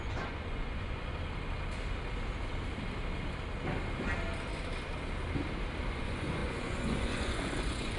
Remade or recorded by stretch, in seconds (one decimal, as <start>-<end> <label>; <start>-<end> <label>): 0.0-1.1 remade; 1.1-5.9 recorded; 5.9-8.0 remade